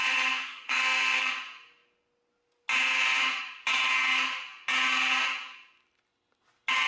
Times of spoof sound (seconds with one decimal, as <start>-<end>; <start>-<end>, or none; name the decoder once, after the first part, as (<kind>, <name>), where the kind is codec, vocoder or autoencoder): 0.0-1.3 (codec, SNAC)